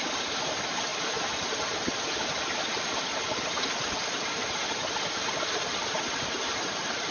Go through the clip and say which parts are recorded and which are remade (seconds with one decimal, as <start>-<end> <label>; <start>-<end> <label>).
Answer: 0.0-7.1 recorded